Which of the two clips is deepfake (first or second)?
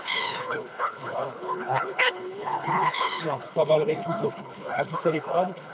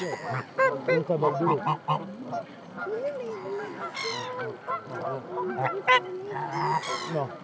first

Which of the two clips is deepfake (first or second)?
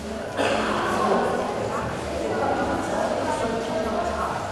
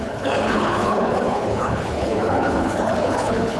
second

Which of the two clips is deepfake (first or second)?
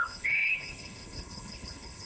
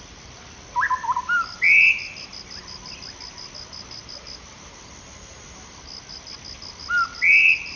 first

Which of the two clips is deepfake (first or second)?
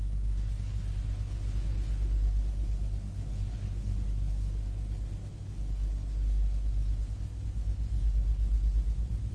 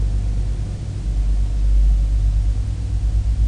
first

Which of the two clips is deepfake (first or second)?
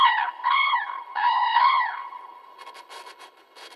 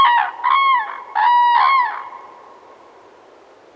first